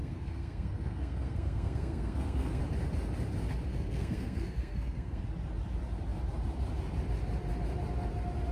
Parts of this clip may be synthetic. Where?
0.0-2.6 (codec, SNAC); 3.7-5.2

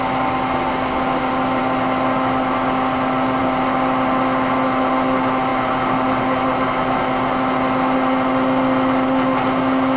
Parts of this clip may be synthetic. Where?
none

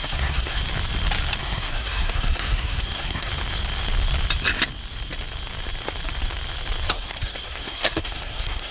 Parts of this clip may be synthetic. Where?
0.0-0.6 (codec, SNAC); 1.4-3.3; 6.9-8.7